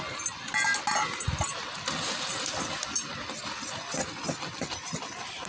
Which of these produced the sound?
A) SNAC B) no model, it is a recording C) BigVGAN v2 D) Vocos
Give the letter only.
B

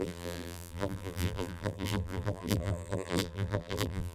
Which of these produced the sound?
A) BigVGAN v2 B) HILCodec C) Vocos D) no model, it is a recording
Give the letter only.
A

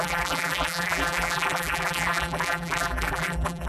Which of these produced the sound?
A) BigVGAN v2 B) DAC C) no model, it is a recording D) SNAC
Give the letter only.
A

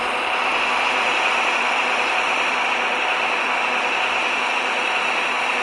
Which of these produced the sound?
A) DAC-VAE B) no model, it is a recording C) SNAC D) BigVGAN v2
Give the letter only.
D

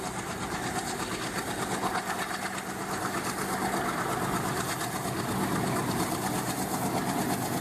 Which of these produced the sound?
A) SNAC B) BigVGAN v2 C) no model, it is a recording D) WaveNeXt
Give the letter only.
C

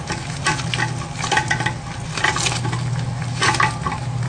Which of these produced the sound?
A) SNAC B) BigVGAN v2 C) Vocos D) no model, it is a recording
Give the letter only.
D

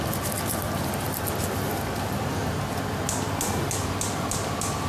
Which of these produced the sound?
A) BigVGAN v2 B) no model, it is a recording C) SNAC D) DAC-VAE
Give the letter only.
B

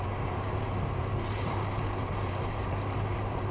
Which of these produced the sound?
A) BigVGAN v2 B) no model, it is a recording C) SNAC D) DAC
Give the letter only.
A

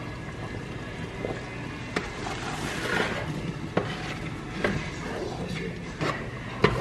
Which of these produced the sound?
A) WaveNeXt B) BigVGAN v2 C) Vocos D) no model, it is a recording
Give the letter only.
D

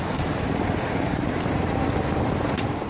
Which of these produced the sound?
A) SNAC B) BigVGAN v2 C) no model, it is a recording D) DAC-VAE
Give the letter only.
B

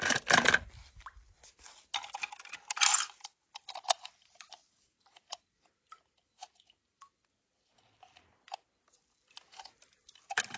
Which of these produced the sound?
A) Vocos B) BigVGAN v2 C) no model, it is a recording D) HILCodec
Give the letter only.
C